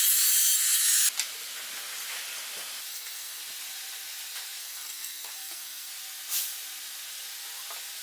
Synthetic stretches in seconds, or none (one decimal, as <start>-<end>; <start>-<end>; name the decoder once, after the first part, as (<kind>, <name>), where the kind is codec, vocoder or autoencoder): 2.9-3.4 (codec, SNAC); 4.6-5.9